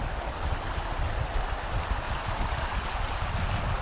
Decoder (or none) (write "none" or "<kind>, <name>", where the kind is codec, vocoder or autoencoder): none